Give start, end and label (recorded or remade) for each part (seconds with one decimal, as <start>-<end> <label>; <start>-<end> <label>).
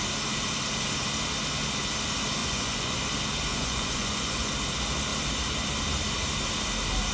0.0-2.4 recorded; 2.4-3.1 remade; 3.1-3.5 recorded; 3.5-4.5 remade; 4.5-7.1 recorded